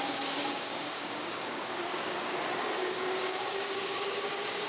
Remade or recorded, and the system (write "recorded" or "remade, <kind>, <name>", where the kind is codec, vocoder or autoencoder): remade, codec, DAC